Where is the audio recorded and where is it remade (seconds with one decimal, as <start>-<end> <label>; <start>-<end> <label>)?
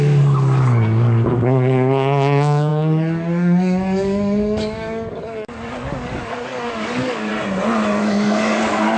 0.0-7.3 remade; 7.3-8.0 recorded; 8.0-9.0 remade